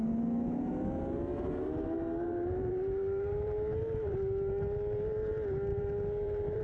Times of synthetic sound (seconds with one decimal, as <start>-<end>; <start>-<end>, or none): 1.3-5.3; 5.7-6.6